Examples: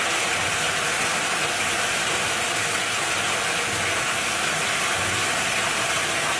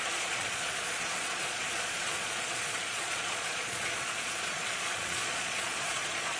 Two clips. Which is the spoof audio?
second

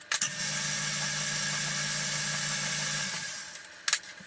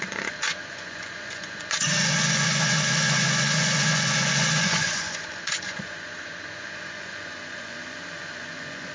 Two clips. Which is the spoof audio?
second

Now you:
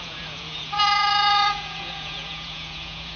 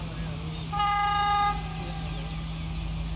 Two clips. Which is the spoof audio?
first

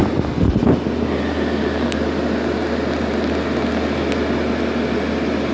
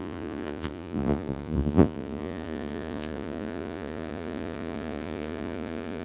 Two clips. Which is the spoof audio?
second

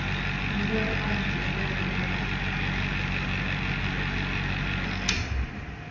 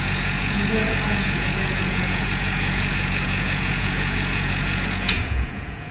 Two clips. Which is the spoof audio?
second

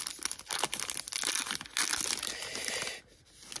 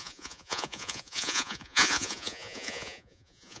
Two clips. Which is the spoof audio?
second